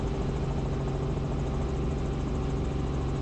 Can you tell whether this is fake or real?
real